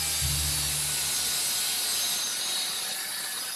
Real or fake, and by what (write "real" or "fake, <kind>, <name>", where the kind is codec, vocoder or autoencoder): real